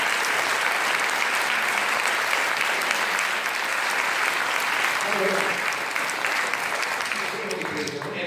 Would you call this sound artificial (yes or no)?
no